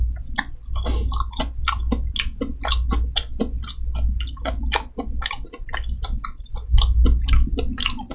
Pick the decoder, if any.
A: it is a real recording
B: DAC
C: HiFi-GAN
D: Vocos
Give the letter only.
A